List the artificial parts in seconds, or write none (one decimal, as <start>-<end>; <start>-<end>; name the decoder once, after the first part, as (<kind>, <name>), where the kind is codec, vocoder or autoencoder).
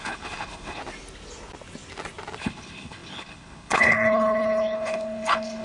0.0-0.8 (codec, HILCodec); 2.4-5.6